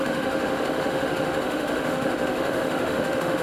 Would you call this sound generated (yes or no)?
yes